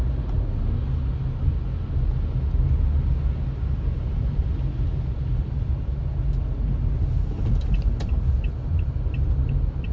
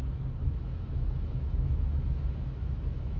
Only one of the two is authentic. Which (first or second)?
first